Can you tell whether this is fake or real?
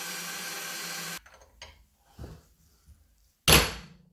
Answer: real